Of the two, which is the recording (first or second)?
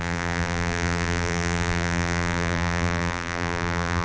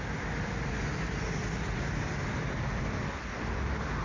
second